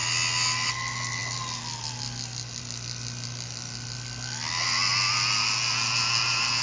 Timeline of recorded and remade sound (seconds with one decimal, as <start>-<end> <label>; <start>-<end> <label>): 0.0-6.6 recorded